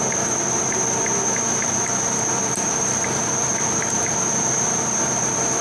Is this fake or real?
fake